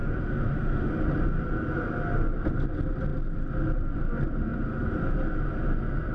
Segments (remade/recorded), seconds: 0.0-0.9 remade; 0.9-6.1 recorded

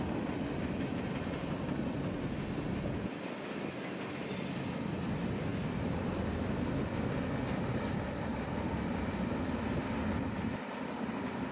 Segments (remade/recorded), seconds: 0.0-11.5 recorded

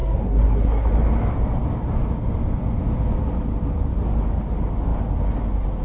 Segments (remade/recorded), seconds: 0.0-0.9 remade; 0.9-5.8 recorded